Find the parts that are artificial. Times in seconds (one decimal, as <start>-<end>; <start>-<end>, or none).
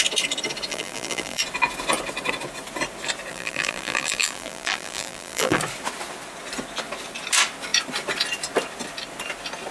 0.7-1.4; 3.3-5.6